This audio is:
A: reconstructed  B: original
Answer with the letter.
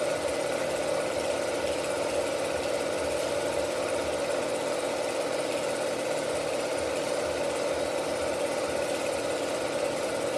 B